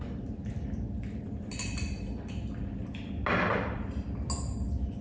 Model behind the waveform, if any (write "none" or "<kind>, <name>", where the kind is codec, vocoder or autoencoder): none